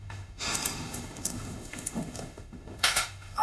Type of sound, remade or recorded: remade